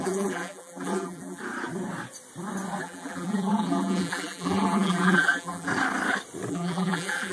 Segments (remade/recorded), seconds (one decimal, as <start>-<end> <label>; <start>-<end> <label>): 0.0-1.4 remade; 1.4-2.8 recorded; 2.8-5.7 remade; 5.7-6.5 recorded; 6.5-7.3 remade